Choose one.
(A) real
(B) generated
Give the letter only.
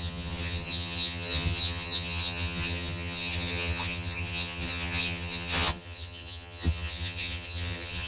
B